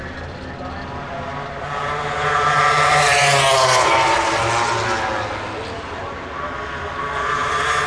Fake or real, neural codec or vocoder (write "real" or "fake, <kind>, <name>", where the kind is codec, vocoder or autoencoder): real